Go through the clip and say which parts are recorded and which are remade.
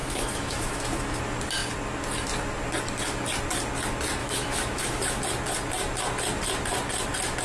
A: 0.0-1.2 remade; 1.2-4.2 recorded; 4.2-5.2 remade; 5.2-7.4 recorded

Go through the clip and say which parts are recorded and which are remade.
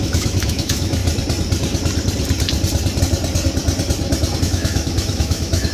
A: 0.0-1.0 remade; 1.0-4.4 recorded; 4.4-5.7 remade